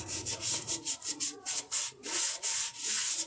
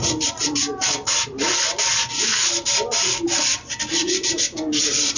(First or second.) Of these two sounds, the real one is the second